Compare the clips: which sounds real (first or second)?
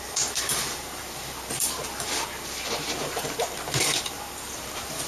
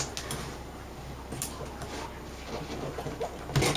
second